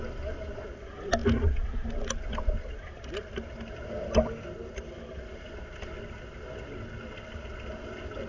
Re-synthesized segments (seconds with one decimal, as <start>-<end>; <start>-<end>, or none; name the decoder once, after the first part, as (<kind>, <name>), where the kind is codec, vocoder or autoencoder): none